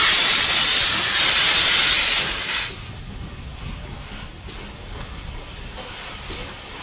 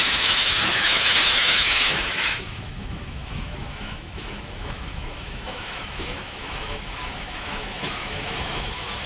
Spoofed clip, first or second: second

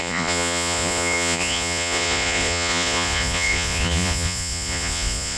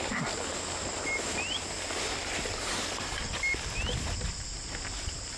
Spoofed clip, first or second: first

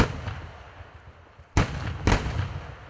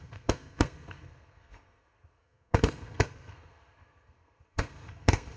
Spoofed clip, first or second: second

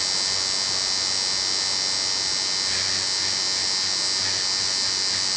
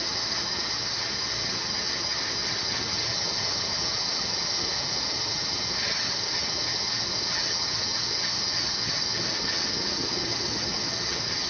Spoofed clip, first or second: second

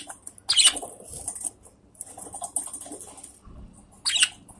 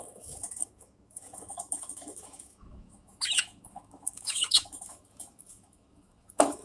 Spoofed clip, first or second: second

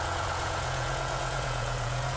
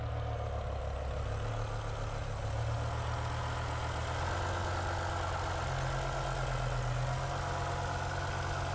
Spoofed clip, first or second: first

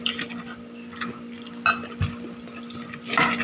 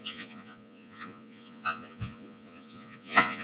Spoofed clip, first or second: second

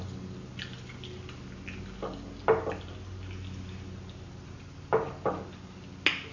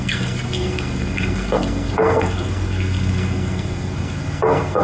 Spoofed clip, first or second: second